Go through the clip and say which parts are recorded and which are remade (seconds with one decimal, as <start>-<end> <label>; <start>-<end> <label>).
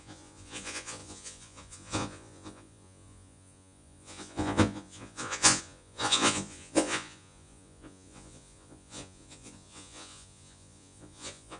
0.0-11.6 remade